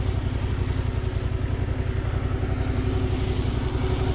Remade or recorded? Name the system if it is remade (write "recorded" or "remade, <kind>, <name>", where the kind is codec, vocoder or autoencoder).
recorded